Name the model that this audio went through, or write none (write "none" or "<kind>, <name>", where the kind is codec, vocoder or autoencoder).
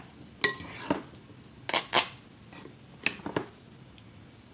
none